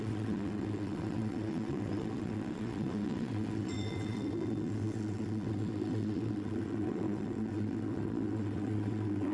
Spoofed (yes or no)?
yes